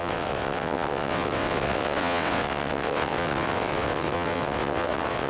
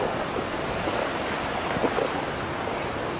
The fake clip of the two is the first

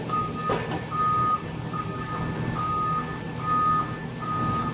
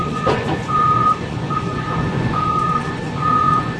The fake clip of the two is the second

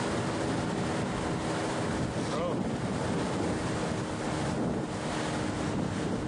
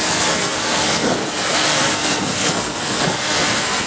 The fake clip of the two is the second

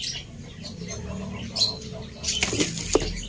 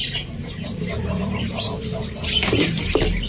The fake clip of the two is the second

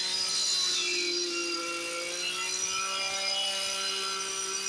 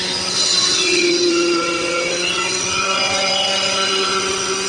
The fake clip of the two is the second